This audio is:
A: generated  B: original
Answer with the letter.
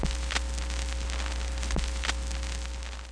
B